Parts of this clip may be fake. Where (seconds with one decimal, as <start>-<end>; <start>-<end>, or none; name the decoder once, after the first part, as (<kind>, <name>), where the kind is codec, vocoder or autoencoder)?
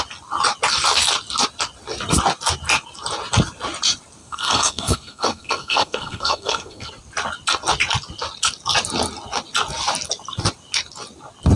4.2-6.9 (codec, SNAC)